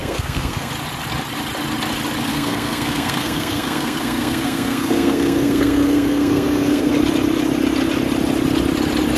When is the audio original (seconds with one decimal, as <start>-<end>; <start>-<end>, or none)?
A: 0.7-2.3; 6.9-9.2